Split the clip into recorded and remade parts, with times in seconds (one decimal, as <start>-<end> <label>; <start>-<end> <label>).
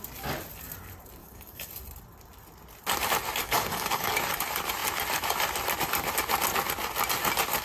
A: 0.0-1.2 recorded; 1.2-1.7 remade; 1.7-3.4 recorded; 3.4-4.1 remade; 4.1-7.6 recorded